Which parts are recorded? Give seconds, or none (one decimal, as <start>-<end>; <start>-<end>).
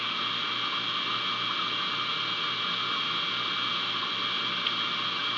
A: 0.0-5.4